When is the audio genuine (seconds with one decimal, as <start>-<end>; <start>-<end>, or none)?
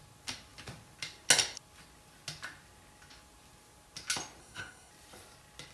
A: 0.0-4.4; 4.9-5.7